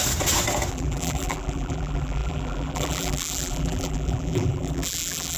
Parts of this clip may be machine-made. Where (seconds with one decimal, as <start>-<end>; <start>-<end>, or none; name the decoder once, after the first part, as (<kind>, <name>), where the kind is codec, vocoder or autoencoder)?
0.7-5.4 (vocoder, BigVGAN v2)